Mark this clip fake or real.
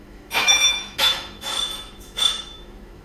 fake